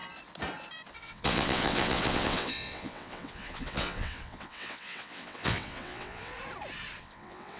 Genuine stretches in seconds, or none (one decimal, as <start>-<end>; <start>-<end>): 0.0-0.9; 6.3-7.0